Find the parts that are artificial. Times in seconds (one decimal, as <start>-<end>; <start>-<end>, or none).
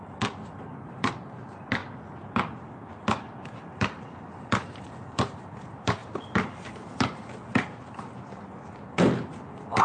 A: 0.0-1.8; 3.6-6.0